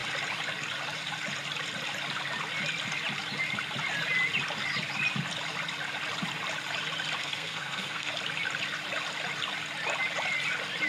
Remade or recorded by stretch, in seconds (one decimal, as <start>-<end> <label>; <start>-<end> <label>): 0.0-7.2 recorded; 7.2-8.1 remade; 8.1-10.9 recorded